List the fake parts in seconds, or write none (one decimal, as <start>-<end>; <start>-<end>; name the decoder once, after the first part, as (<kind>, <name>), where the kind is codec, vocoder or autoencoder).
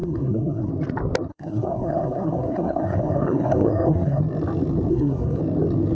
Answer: 0.0-0.7 (codec, SNAC); 1.3-4.2; 4.9-5.4